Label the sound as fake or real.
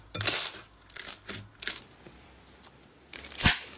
real